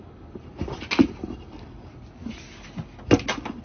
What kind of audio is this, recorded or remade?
recorded